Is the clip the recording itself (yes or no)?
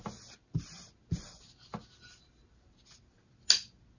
yes